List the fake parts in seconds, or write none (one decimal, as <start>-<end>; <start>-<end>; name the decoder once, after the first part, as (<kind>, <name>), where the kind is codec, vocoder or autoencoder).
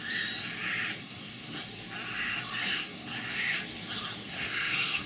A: 1.0-1.6 (codec, SNAC); 2.6-3.6; 4.3-5.1